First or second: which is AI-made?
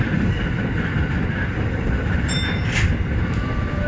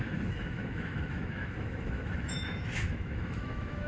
second